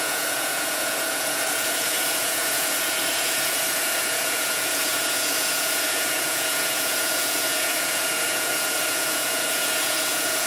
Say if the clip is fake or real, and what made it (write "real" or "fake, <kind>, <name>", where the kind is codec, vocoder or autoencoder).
fake, vocoder, Vocos